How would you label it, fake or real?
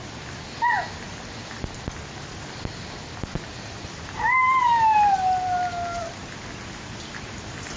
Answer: real